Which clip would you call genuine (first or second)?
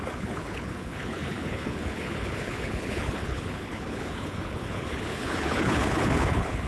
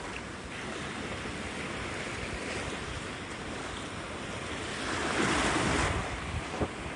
second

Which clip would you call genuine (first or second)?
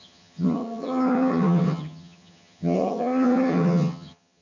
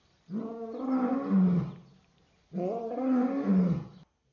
second